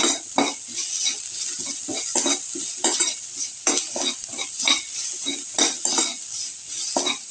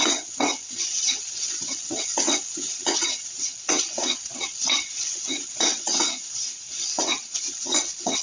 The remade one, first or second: second